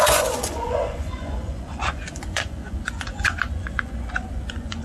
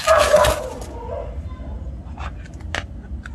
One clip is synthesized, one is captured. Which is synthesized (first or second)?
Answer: first